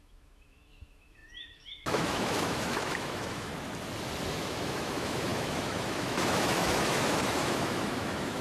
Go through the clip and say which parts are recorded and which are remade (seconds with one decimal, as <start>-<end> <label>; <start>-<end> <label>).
0.0-3.5 remade; 3.5-4.3 recorded; 4.3-8.4 remade